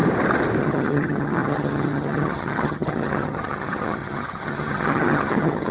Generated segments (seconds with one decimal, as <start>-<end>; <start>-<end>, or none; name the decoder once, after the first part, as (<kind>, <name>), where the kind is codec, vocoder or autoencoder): 0.6-5.7 (vocoder, HiFi-GAN)